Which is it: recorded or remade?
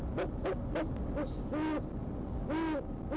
recorded